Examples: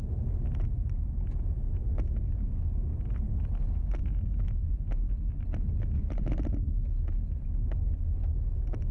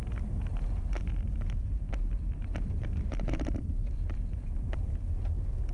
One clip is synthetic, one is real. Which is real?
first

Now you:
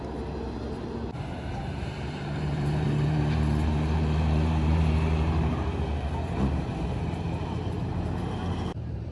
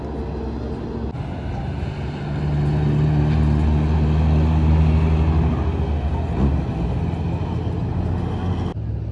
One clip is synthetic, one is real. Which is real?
second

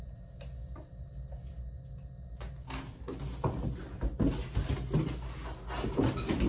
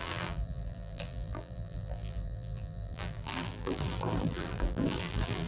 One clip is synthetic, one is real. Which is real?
first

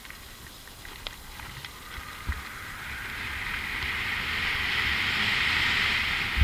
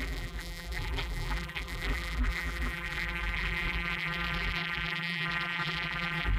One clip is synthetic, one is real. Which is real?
first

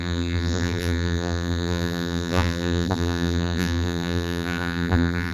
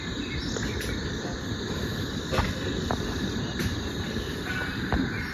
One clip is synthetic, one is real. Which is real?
second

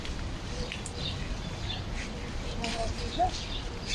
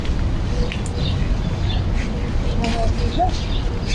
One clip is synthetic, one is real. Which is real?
second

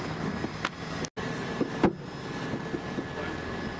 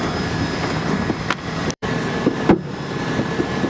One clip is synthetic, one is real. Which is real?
first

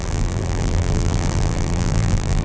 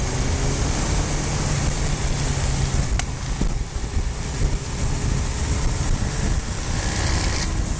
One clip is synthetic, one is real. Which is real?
second